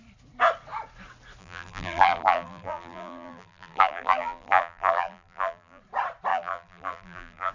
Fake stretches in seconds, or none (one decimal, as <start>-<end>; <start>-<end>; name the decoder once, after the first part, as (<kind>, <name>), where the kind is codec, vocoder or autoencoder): 1.4-5.8 (vocoder, BigVGAN v2); 6.3-7.5